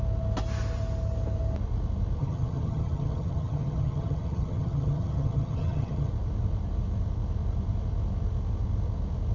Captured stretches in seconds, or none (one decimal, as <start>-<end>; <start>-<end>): 0.0-2.2; 6.1-9.3